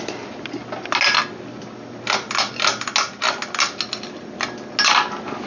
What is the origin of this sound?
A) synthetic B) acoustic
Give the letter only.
B